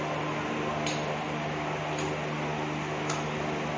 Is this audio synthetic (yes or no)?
no